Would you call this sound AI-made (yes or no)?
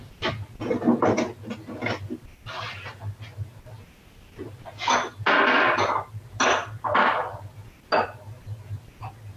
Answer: no